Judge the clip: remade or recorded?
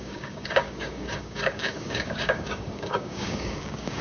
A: remade